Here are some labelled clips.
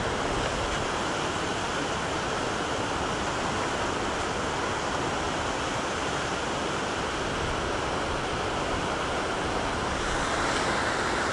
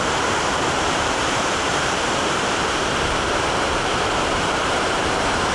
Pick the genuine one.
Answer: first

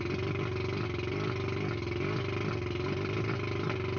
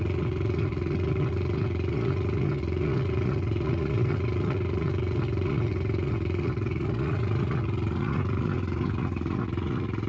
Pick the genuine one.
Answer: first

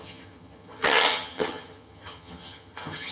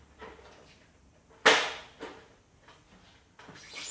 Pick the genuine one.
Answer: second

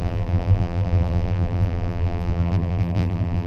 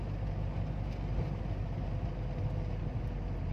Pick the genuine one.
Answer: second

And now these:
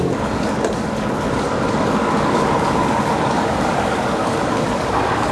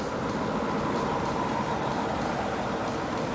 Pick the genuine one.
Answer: second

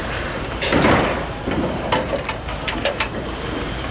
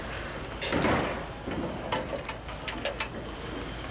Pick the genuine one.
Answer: second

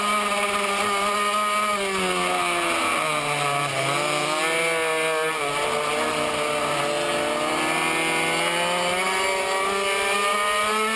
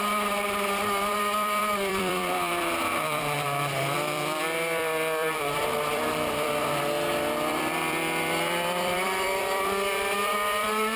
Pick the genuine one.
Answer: first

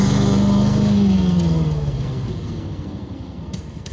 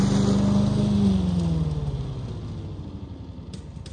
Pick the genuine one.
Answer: second